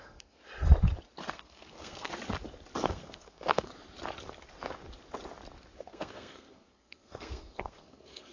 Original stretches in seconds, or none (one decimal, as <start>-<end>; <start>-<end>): 0.4-1.3; 2.1-2.8; 3.7-5.8